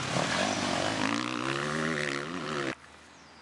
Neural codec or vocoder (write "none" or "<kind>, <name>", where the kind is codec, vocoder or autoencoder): none